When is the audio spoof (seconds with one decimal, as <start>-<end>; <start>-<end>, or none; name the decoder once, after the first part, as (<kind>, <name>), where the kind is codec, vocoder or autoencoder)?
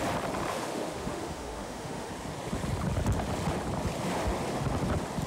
0.5-2.1 (autoencoder, DAC-VAE)